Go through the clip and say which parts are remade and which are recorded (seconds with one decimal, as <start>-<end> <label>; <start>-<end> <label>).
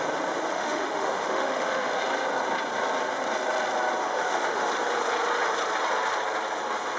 0.0-0.5 recorded; 0.5-2.0 remade; 2.0-4.0 recorded; 4.0-4.6 remade; 4.6-7.0 recorded